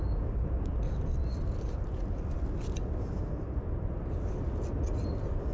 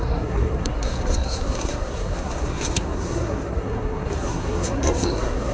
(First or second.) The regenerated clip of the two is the second